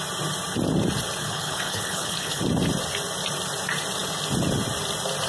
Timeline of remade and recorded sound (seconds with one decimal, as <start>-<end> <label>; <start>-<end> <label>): 0.0-1.2 recorded; 1.2-2.4 remade; 2.4-5.3 recorded